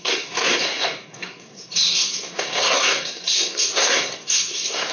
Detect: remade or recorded remade